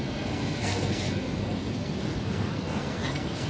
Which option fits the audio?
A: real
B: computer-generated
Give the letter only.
B